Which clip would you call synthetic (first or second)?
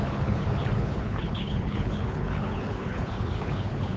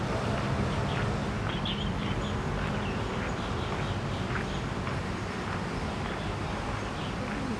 first